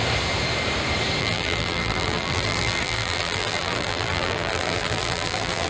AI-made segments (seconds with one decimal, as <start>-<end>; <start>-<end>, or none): 1.2-5.7